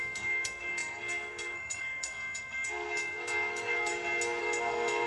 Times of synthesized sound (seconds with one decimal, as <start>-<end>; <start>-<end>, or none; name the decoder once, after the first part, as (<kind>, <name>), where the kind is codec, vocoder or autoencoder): 0.0-3.9 (codec, SNAC); 4.4-5.1